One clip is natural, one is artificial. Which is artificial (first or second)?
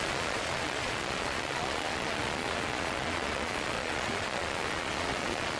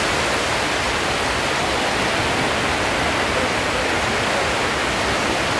first